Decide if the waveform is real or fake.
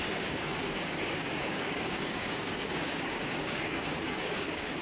fake